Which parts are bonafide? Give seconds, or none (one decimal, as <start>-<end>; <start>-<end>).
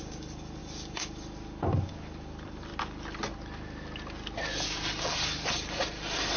2.7-5.1